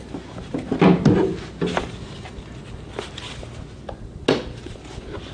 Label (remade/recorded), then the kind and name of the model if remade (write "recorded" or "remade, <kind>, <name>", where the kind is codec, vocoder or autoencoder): recorded